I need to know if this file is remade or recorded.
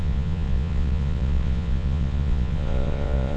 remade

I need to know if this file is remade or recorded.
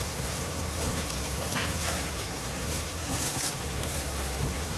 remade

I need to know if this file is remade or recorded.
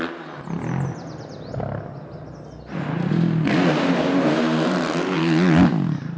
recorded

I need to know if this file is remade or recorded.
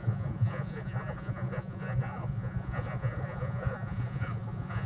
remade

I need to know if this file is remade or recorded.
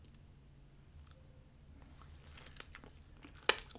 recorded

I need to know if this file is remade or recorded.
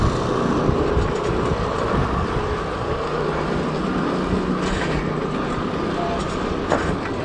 recorded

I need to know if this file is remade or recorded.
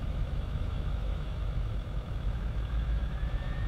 remade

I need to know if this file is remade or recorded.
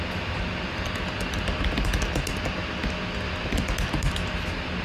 recorded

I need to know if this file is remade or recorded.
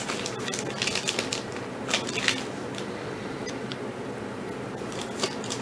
recorded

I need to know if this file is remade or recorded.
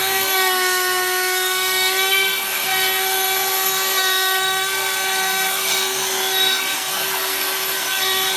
remade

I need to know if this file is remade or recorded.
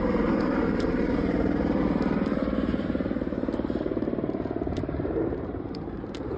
remade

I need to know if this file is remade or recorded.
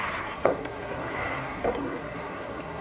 remade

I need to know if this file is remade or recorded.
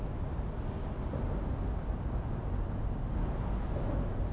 recorded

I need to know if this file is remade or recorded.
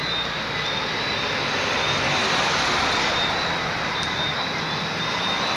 recorded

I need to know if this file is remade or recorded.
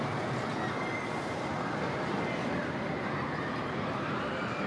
recorded